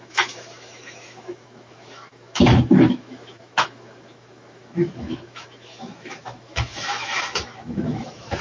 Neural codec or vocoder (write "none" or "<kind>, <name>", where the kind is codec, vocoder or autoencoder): autoencoder, DAC-VAE